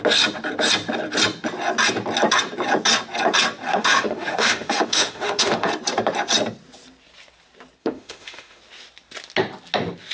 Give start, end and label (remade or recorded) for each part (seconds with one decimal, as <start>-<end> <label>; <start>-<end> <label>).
0.0-3.7 recorded; 3.7-5.7 remade; 5.7-7.8 recorded; 7.8-8.6 remade; 8.6-10.1 recorded